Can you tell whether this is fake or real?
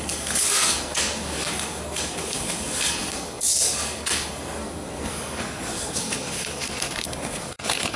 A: fake